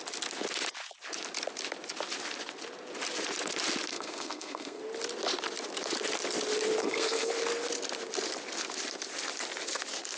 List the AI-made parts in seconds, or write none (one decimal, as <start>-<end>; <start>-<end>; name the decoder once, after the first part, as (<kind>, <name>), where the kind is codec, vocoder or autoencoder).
3.9-4.8 (codec, SNAC); 6.8-7.3